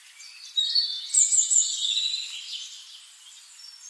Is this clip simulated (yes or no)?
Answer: no